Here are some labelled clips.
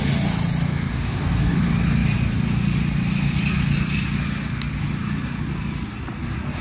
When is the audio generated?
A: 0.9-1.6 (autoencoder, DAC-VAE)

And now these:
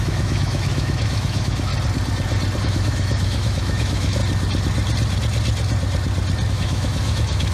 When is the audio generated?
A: 0.0-1.7 (autoencoder, DAC-VAE); 2.6-4.2; 6.5-7.5

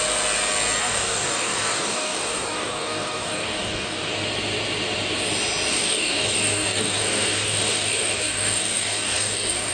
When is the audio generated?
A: 0.8-4.1 (codec, DAC); 5.7-9.7

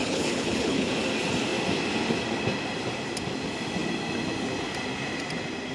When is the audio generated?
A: 0.0-0.9 (codec, HILCodec)

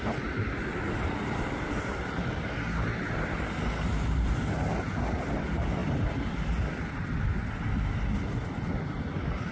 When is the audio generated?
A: none

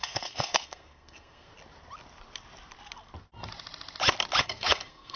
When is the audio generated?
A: 0.0-1.5 (codec, SNAC); 4.4-5.2